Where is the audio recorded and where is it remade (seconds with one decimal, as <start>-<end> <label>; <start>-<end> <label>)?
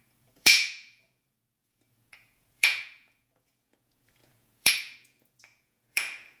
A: 0.0-6.4 remade